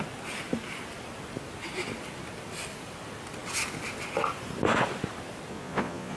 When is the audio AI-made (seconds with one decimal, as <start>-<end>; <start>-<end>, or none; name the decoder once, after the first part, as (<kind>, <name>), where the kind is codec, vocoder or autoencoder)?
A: 5.5-6.2 (vocoder, Vocos)